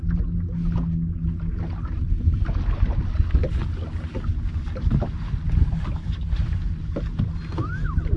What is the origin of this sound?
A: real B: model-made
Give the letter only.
A